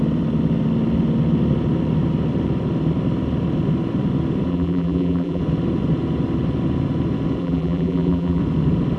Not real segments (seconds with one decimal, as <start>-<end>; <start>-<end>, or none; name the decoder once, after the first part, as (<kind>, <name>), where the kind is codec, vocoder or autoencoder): 4.5-5.4 (vocoder, BigVGAN v2); 7.4-8.4